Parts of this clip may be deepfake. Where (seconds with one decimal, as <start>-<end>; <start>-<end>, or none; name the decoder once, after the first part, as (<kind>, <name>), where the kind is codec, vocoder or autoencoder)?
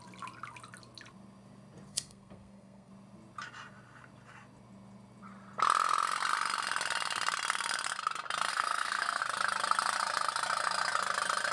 1.9-2.9 (codec, SNAC); 8.5-9.2